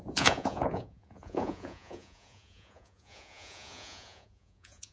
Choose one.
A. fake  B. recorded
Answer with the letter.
A